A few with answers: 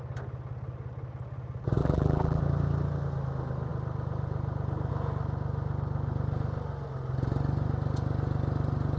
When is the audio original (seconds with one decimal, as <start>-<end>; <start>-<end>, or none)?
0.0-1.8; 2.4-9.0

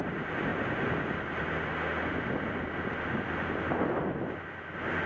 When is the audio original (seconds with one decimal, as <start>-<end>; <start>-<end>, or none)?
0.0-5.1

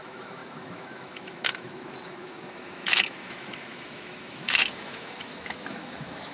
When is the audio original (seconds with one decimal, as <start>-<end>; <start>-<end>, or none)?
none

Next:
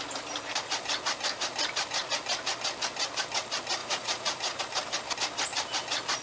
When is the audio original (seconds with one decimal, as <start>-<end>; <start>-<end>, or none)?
0.0-3.8; 4.6-6.2